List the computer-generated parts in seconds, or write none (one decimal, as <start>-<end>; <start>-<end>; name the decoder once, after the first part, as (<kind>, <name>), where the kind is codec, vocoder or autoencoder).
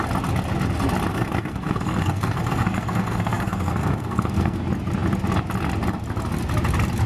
1.1-4.6 (codec, SNAC)